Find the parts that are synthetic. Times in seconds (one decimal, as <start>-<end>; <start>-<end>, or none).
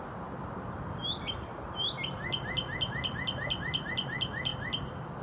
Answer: none